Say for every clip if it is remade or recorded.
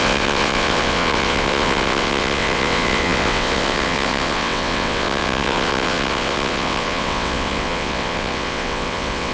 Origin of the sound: remade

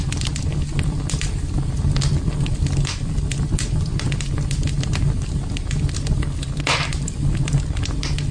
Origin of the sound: recorded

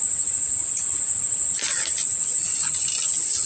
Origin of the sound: recorded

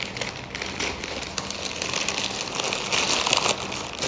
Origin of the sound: recorded